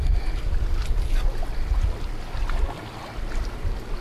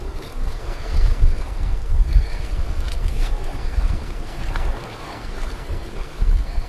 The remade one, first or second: second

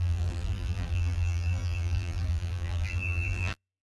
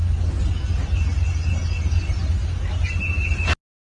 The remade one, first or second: first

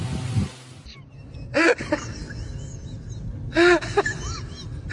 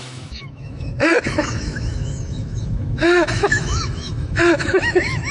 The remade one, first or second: second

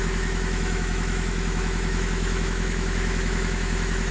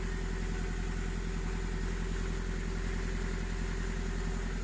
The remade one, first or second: first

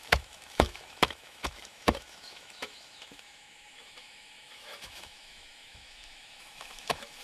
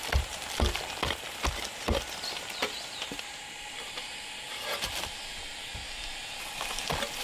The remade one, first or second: first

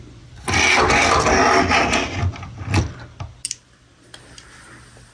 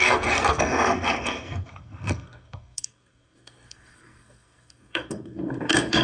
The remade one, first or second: second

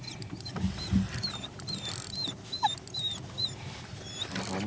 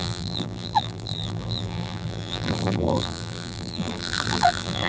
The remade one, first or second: second